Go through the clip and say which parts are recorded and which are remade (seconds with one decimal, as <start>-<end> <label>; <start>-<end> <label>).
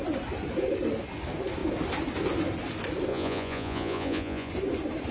0.0-3.1 recorded; 3.1-4.5 remade; 4.5-5.1 recorded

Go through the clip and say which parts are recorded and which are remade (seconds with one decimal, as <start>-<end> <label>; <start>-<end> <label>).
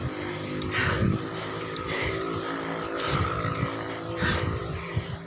0.0-5.3 recorded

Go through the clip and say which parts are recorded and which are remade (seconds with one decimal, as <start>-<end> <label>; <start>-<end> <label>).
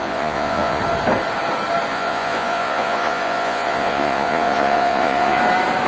0.0-0.8 remade; 0.8-1.9 recorded; 1.9-5.4 remade; 5.4-5.9 recorded